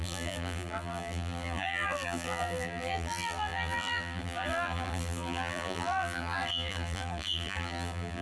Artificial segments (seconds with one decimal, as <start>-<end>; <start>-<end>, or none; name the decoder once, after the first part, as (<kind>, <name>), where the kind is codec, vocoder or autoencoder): 0.0-8.2 (vocoder, BigVGAN v2)